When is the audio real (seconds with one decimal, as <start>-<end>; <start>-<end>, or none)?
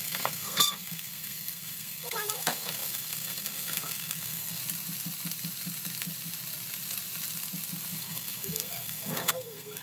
4.6-8.0